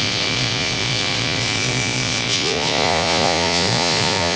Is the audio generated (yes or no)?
yes